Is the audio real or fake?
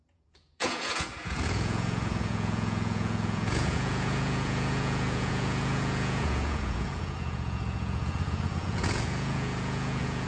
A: fake